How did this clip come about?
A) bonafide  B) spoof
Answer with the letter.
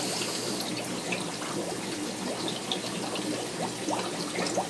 A